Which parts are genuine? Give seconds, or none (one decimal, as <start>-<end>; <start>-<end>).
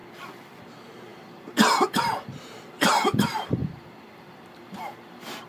0.0-0.7